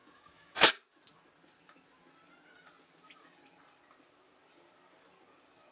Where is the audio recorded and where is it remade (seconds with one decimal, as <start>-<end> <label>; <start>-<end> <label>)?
0.0-0.7 remade; 0.7-5.7 recorded